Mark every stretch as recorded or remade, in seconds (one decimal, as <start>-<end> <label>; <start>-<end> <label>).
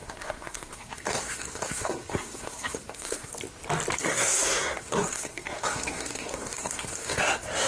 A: 0.0-3.3 remade; 3.3-4.0 recorded; 4.0-7.7 remade